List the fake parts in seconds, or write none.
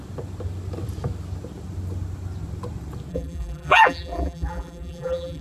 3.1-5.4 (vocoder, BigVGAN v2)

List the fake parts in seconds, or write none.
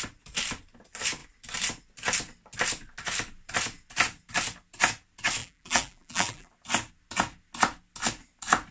5.4-6.5 (vocoder, BigVGAN v2)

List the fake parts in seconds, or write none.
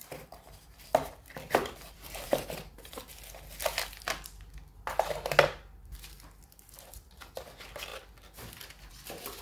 0.0-3.1 (vocoder, BigVGAN v2)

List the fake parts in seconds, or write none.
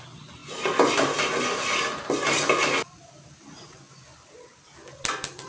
none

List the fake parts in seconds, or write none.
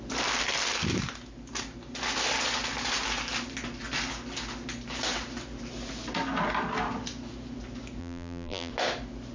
8.0-8.7 (vocoder, BigVGAN v2)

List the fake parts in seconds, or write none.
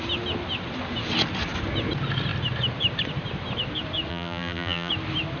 4.1-4.9 (vocoder, BigVGAN v2)